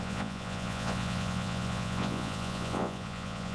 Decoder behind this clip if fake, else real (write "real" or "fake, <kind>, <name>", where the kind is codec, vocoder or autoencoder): fake, vocoder, Vocos